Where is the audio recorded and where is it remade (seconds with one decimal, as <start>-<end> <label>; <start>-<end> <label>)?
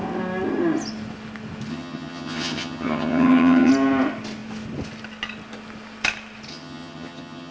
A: 0.0-1.7 recorded; 1.7-3.7 remade; 3.7-6.5 recorded; 6.5-7.5 remade